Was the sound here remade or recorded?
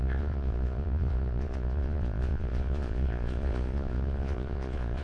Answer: remade